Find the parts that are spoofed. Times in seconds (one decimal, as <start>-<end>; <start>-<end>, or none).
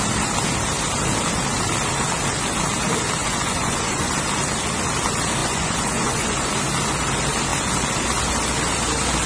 3.2-4.1; 5.4-6.5